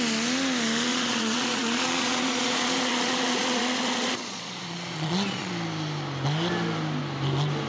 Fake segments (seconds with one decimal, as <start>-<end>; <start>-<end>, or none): 0.9-5.5